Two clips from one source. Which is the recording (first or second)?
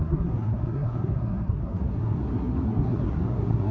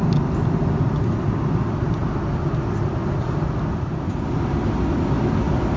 second